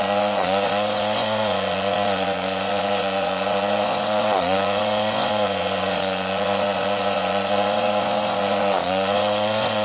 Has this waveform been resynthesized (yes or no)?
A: yes